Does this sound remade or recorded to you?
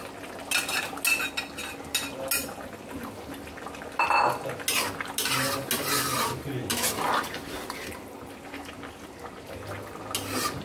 recorded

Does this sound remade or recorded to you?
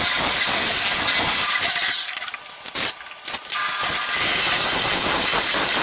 recorded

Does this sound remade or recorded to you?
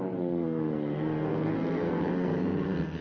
remade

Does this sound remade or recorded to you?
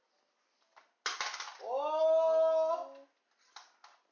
recorded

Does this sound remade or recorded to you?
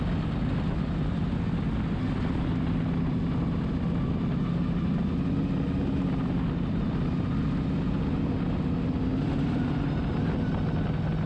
recorded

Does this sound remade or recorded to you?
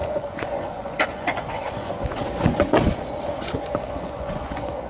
remade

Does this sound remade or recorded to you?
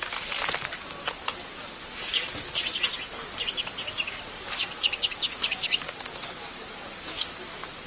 recorded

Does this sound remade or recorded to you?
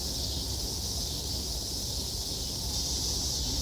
recorded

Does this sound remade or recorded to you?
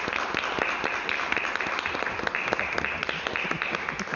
recorded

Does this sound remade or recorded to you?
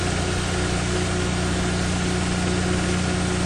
recorded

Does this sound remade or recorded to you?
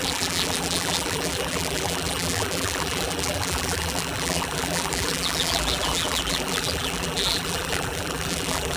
remade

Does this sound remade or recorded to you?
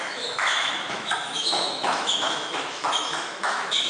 remade